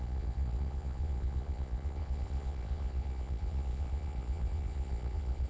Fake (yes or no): yes